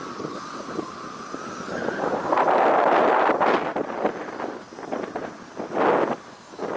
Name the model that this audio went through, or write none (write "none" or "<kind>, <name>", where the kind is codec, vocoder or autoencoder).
none